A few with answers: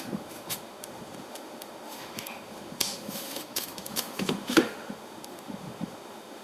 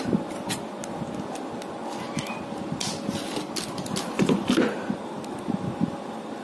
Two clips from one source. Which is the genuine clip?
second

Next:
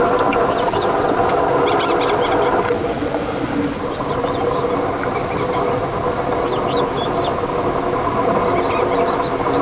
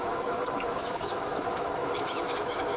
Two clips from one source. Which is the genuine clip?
first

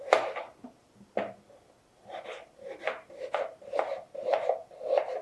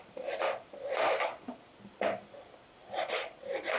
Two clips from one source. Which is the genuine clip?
first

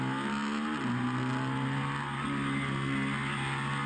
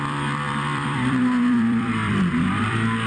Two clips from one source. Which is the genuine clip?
first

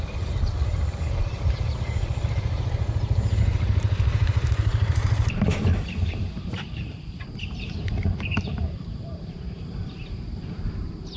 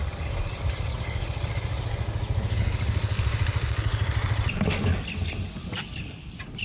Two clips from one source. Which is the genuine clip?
second